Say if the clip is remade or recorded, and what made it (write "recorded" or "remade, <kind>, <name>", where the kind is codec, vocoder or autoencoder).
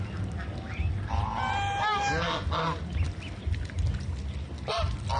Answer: recorded